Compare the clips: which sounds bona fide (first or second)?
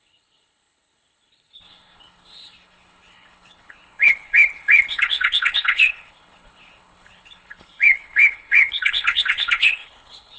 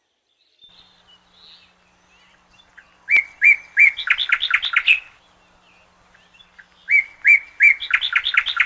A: second